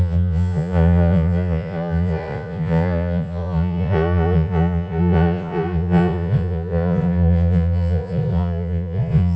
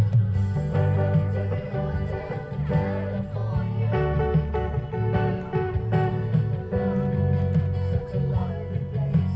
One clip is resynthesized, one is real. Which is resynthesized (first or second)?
first